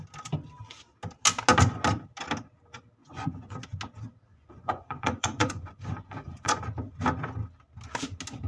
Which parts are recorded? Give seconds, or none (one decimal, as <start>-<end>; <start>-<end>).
0.0-3.0; 3.6-4.3; 6.6-8.5